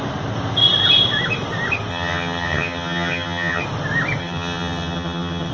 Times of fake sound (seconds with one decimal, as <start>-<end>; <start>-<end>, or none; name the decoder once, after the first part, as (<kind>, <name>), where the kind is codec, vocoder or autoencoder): 1.9-3.6 (vocoder, HiFi-GAN); 4.2-5.5